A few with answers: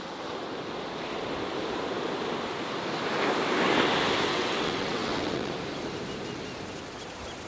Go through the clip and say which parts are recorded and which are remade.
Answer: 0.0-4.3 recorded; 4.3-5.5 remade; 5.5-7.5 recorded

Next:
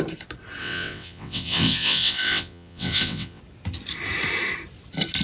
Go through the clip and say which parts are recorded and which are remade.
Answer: 0.0-0.6 recorded; 0.6-3.4 remade; 3.4-5.2 recorded

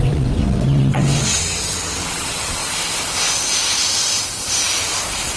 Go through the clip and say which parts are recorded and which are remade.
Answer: 0.0-2.6 remade; 2.6-5.4 recorded